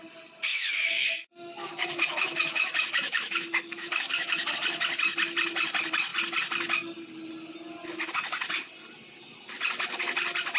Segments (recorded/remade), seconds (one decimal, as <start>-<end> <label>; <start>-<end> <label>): 0.0-0.5 recorded; 0.5-4.5 remade; 4.5-10.6 recorded